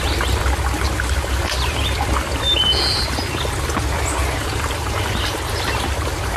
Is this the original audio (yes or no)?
yes